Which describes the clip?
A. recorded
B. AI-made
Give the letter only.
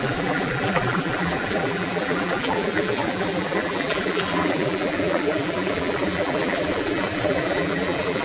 B